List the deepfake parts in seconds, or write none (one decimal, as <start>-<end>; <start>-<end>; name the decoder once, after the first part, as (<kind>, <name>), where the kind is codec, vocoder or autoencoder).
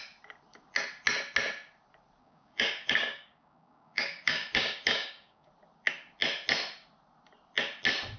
2.2-5.5 (codec, DAC)